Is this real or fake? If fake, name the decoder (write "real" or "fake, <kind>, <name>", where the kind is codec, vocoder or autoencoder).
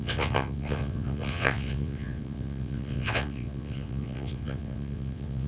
fake, vocoder, WaveNeXt